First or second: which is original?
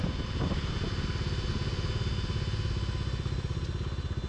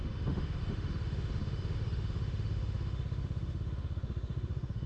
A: first